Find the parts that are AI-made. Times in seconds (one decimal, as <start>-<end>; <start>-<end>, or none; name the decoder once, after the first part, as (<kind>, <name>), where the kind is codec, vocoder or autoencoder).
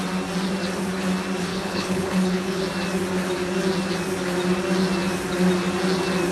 1.5-2.6 (codec, HILCodec)